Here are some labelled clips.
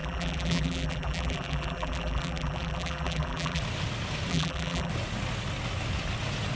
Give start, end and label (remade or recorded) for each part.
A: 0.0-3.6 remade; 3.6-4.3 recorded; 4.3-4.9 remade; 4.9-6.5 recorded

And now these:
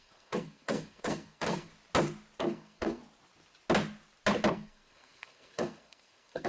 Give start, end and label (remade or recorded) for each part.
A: 0.0-1.7 remade; 1.7-2.4 recorded; 2.4-3.0 remade; 3.0-4.5 recorded; 4.5-6.5 remade

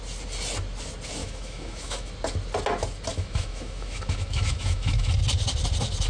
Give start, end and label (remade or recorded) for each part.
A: 0.0-1.2 recorded; 1.2-2.1 remade; 2.1-3.1 recorded; 3.1-5.1 remade; 5.1-6.1 recorded

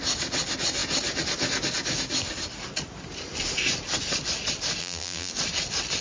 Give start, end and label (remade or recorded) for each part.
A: 0.0-4.8 recorded; 4.8-5.3 remade; 5.3-6.0 recorded

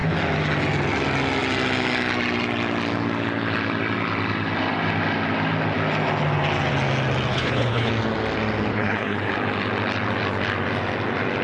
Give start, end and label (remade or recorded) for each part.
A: 0.0-7.3 recorded; 7.3-7.9 remade; 7.9-8.7 recorded; 8.7-9.3 remade; 9.3-11.4 recorded

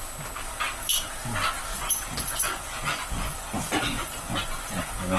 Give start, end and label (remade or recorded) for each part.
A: 0.0-1.7 recorded; 1.7-4.8 remade; 4.8-5.2 recorded

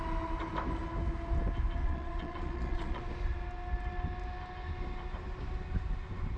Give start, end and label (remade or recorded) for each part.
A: 0.0-1.8 recorded; 1.8-3.0 remade; 3.0-6.4 recorded